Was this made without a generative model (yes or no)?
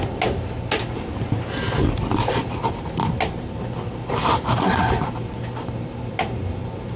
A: yes